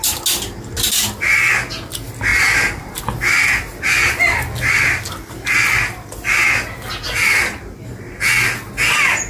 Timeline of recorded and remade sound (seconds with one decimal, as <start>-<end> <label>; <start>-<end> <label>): 0.0-2.3 recorded; 2.3-3.0 remade; 3.0-9.3 recorded